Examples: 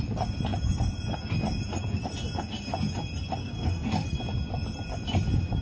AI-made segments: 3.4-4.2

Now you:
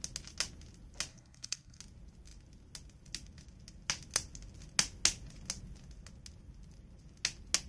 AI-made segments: 1.1-1.8